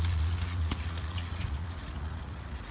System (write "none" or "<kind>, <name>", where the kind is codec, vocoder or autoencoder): vocoder, Vocos